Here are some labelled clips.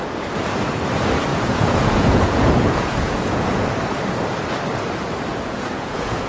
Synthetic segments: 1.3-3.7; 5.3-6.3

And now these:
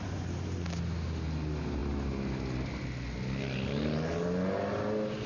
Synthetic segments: none